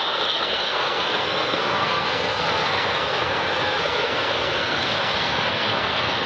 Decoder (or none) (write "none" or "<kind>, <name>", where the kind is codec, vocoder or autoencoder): codec, SNAC